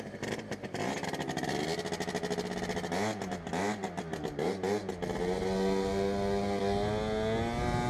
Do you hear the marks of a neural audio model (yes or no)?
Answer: no